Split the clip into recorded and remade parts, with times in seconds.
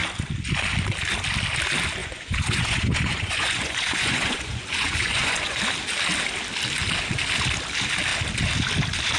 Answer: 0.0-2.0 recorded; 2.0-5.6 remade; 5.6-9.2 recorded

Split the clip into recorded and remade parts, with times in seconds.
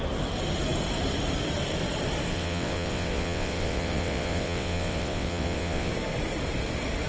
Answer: 0.0-2.3 recorded; 2.3-5.9 remade; 5.9-7.1 recorded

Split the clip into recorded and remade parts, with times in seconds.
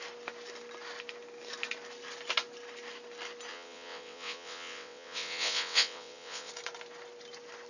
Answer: 0.0-3.5 recorded; 3.5-6.5 remade; 6.5-7.7 recorded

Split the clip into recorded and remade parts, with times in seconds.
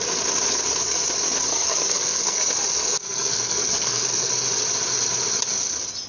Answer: 0.0-1.5 recorded; 1.5-2.5 remade; 2.5-2.9 recorded; 2.9-4.3 remade; 4.3-6.1 recorded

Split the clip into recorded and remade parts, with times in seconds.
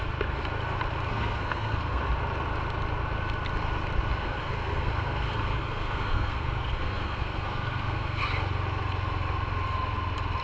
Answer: 0.0-1.1 recorded; 1.1-2.0 remade; 2.0-4.2 recorded; 4.2-8.2 remade; 8.2-10.4 recorded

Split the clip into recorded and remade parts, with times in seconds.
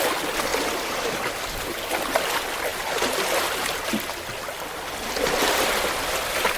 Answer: 0.0-6.6 recorded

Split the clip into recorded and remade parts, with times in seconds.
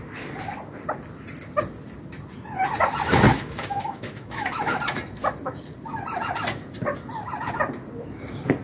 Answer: 0.0-3.3 recorded; 3.3-4.8 remade; 4.8-8.6 recorded